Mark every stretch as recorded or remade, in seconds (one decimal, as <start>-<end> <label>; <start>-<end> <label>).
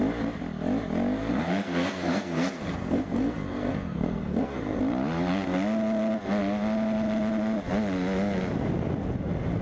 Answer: 0.0-1.2 recorded; 1.2-4.8 remade; 4.8-9.6 recorded